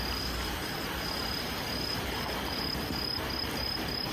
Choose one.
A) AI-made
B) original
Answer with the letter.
B